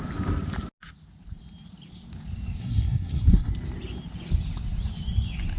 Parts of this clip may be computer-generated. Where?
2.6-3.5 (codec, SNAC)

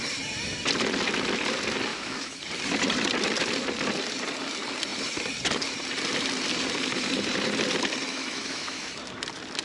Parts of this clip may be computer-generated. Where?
1.9-2.4 (autoencoder, DAC-VAE); 8.1-8.9

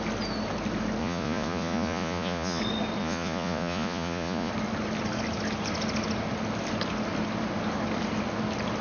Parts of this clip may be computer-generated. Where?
1.0-2.6 (vocoder, Vocos); 3.0-4.5

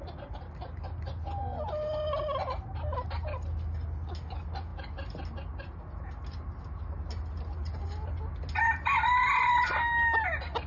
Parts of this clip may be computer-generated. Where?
none

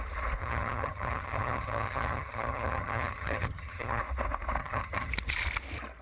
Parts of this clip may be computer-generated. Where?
0.4-4.0 (vocoder, HiFi-GAN); 4.6-5.1

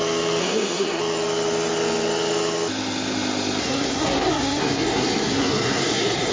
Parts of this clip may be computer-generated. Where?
0.4-1.0 (codec, SNAC); 3.6-6.3